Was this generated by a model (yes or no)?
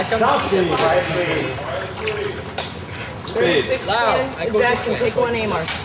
no